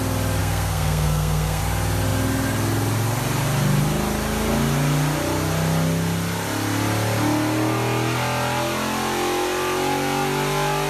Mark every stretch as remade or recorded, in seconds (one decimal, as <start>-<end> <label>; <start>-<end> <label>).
0.0-0.4 recorded; 0.4-1.6 remade; 1.6-10.9 recorded